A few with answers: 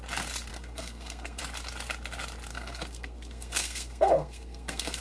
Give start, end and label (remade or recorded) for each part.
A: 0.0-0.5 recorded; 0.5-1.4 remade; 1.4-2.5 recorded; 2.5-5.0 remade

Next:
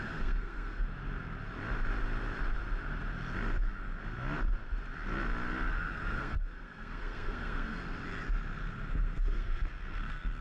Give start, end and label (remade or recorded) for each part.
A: 0.0-0.9 remade; 0.9-5.7 recorded; 5.7-7.8 remade; 7.8-8.9 recorded; 8.9-10.4 remade

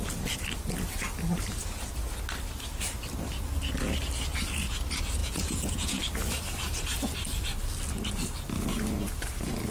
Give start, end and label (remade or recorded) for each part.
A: 0.0-5.2 recorded; 5.2-6.0 remade; 6.0-9.7 recorded

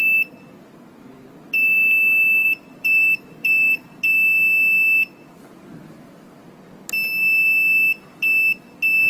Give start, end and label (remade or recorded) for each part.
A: 0.0-2.7 recorded; 2.7-4.0 remade; 4.0-9.1 recorded

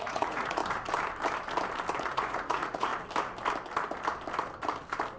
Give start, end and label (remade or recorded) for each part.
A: 0.0-0.6 remade; 0.6-2.0 recorded; 2.0-2.9 remade; 2.9-5.2 recorded

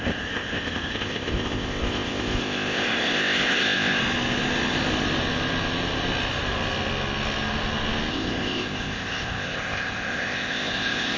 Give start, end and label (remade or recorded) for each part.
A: 0.0-4.0 remade; 4.0-8.1 recorded; 8.1-11.2 remade

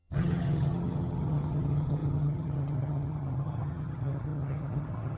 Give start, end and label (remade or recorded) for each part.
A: 0.0-5.2 remade

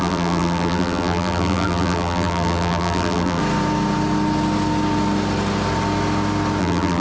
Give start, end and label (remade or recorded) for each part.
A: 0.0-3.4 remade; 3.4-6.6 recorded; 6.6-7.0 remade